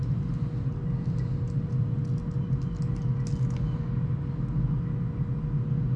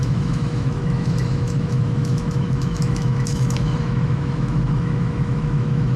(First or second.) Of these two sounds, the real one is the first